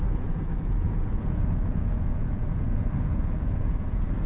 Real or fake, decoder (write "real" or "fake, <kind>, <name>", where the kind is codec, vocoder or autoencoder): fake, vocoder, Vocos